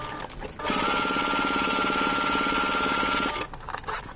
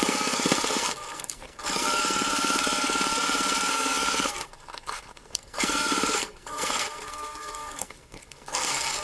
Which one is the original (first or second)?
first